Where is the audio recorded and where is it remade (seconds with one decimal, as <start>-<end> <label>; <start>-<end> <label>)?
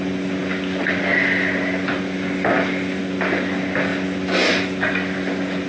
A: 0.0-5.7 recorded